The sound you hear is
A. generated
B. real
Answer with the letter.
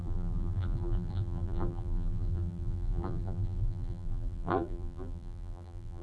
A